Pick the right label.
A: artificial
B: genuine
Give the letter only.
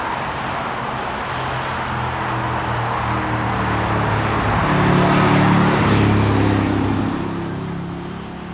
B